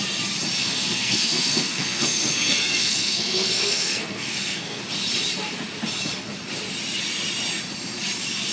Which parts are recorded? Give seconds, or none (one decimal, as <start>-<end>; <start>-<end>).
0.0-0.6; 4.8-8.5